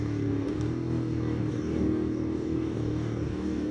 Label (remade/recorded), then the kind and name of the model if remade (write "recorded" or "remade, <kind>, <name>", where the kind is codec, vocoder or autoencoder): remade, codec, DAC